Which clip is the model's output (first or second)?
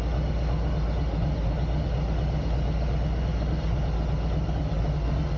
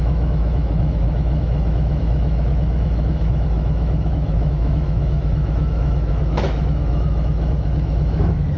second